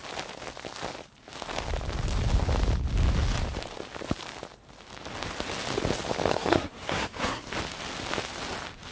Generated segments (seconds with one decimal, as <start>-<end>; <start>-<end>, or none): 6.3-7.5